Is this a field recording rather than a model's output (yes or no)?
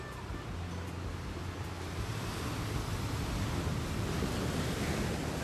yes